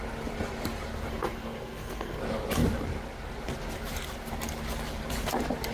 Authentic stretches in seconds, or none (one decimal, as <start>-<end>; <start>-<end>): 0.0-1.1; 2.2-5.7